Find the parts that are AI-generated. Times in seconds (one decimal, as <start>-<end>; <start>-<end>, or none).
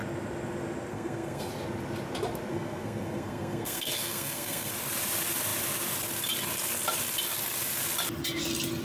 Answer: 0.9-1.5; 2.5-4.7